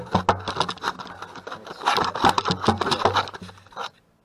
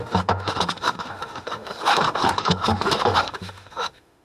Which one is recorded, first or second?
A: first